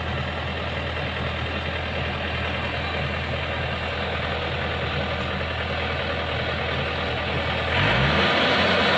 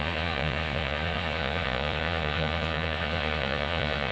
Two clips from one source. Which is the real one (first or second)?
first